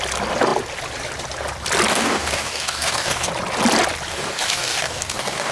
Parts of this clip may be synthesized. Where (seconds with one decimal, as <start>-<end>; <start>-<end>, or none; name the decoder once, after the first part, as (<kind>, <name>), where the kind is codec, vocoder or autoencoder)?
1.9-3.3 (codec, DAC); 4.1-5.5